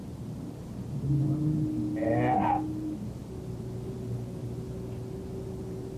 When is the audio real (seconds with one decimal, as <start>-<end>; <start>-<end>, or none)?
0.6-6.0